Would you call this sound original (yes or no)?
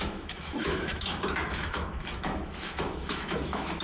no